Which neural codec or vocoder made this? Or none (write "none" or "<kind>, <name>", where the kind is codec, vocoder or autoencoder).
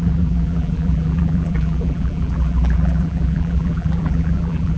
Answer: vocoder, BigVGAN v2